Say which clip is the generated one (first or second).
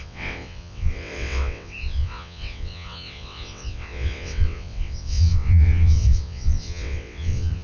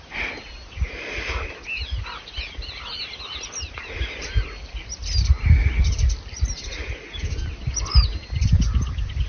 first